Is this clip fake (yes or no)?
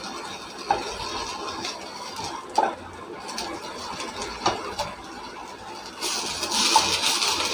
no